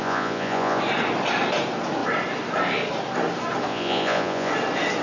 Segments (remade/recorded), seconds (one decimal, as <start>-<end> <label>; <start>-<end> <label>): 0.0-0.8 remade; 0.8-3.7 recorded; 3.7-4.5 remade; 4.5-5.0 recorded